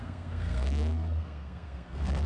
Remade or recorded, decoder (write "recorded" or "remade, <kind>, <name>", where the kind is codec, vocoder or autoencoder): remade, codec, SNAC